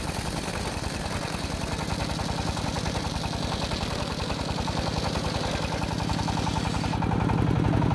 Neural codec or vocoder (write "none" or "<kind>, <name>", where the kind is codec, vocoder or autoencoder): none